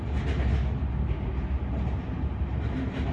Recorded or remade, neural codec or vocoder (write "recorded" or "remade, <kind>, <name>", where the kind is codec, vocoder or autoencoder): recorded